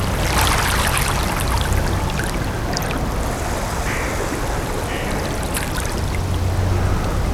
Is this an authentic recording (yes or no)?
yes